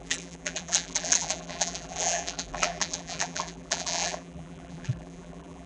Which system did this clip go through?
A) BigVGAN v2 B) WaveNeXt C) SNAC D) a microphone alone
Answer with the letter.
A